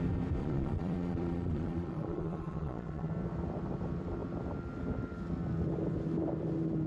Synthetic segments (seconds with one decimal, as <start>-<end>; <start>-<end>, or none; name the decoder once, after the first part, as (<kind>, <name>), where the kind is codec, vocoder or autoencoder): 0.4-3.1 (vocoder, Vocos)